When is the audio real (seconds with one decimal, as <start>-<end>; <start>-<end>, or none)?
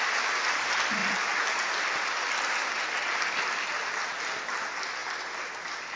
0.0-6.0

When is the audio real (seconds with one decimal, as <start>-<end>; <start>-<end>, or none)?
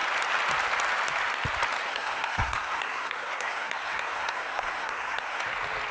0.0-1.9; 5.4-5.9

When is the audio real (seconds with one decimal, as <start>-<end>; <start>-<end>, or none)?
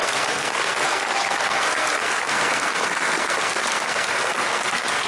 none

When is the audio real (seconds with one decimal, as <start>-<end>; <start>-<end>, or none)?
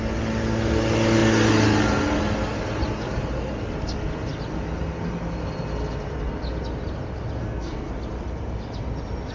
0.0-7.4; 7.9-9.3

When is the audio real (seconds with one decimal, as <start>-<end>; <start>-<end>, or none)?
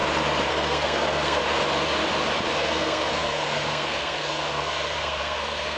0.0-0.5; 1.4-2.5